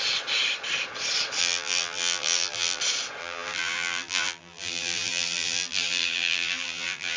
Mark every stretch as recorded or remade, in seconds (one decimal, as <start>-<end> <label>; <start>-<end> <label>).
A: 0.0-1.4 recorded; 1.4-2.8 remade; 2.8-3.2 recorded; 3.2-7.2 remade